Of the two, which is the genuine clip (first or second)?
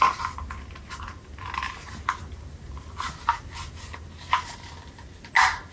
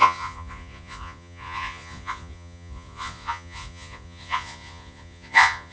first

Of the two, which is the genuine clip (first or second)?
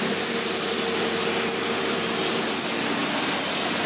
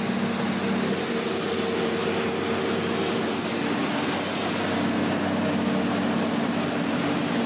second